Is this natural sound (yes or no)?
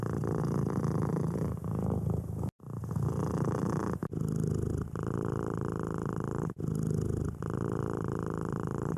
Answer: yes